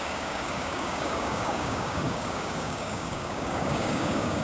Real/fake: fake